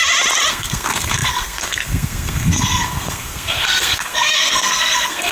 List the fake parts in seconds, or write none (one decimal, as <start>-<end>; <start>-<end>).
0.5-5.3